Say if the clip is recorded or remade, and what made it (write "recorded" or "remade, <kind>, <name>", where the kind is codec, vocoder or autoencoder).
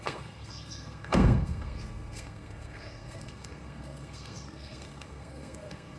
remade, codec, SNAC